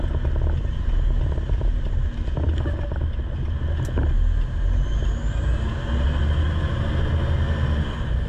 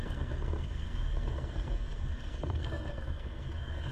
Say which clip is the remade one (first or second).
second